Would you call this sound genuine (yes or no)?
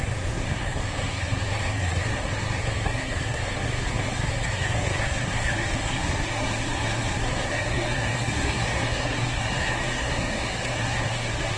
no